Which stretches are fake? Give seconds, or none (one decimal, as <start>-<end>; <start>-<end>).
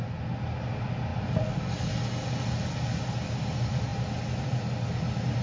1.1-1.7